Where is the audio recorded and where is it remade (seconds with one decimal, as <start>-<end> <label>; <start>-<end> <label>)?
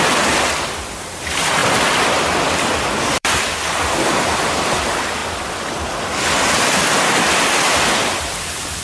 0.0-5.2 remade; 5.2-7.8 recorded; 7.8-8.8 remade